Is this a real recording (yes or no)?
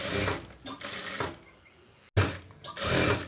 yes